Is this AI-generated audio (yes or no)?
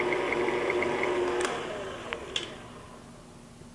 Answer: no